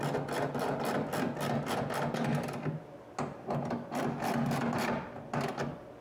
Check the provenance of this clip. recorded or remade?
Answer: recorded